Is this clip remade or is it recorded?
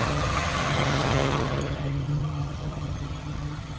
remade